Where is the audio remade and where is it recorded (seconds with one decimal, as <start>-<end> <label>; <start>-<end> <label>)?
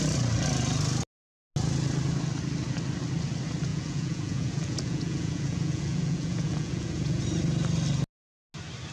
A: 0.0-3.7 recorded; 3.7-7.2 remade; 7.2-8.9 recorded